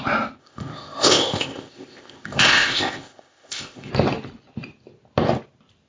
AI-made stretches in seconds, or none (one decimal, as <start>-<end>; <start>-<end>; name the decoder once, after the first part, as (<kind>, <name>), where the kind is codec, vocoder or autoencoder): 0.4-3.9 (codec, ZipCodec)